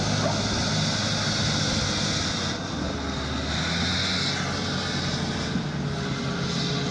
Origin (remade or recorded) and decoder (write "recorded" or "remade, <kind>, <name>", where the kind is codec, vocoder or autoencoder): recorded